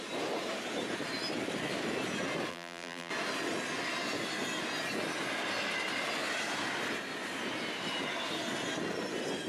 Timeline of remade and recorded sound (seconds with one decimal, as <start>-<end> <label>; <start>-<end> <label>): 0.0-2.5 recorded; 2.5-3.1 remade; 3.1-9.5 recorded